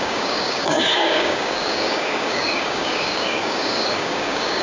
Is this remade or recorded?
remade